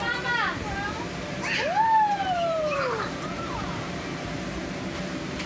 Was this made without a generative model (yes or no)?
no